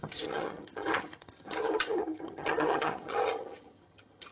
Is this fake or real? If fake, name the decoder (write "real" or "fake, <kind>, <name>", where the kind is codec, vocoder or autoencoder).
fake, vocoder, HiFi-GAN